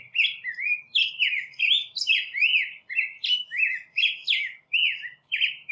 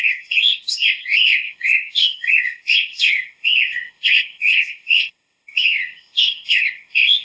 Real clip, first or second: first